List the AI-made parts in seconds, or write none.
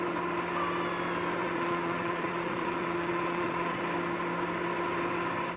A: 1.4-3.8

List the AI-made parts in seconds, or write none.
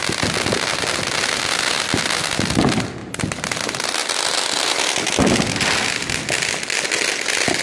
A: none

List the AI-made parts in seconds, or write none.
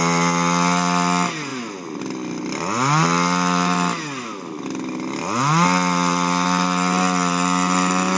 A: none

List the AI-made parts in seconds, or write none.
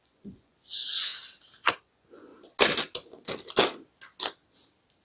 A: 0.0-1.1; 1.8-2.3